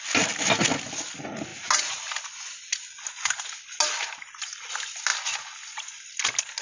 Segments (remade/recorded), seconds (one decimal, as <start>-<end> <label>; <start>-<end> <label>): 0.0-6.6 recorded